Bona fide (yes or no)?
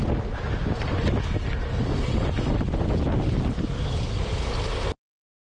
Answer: yes